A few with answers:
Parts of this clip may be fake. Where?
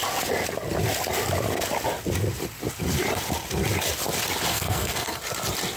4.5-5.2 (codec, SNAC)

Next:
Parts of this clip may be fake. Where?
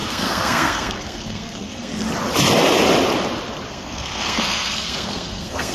0.0-1.9 (codec, SNAC); 3.7-5.7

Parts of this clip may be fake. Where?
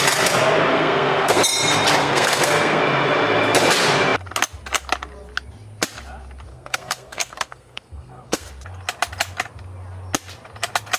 0.7-1.4 (codec, SNAC); 2.0-2.8; 6.5-8.5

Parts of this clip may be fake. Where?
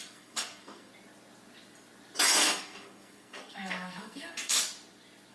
0.0-0.9 (codec, SNAC); 2.3-4.6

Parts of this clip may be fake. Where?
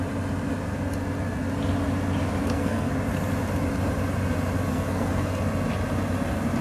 2.4-2.9 (codec, SNAC); 4.7-5.4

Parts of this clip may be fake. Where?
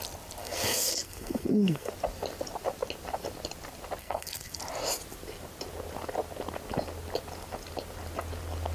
0.4-1.9 (codec, SNAC); 4.0-4.6